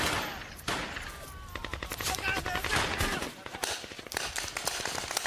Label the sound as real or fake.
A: real